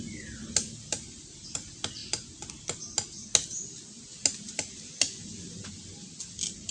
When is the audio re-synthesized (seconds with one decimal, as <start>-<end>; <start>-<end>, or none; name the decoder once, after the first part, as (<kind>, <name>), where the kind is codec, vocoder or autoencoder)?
none